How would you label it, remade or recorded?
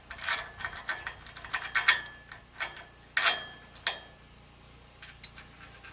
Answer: recorded